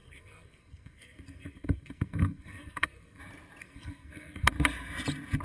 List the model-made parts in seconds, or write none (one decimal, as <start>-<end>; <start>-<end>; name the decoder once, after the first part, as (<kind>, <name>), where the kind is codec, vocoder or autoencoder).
0.0-3.2 (codec, SNAC); 3.6-4.5